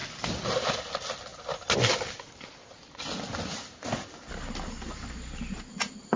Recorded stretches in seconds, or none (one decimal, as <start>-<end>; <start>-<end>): 0.0-6.2